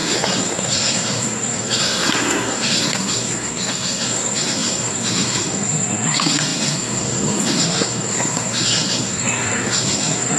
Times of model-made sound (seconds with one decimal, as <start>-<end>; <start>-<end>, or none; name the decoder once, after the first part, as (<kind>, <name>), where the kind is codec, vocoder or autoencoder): 0.0-10.4 (codec, SNAC)